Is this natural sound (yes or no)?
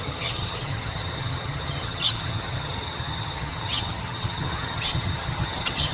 no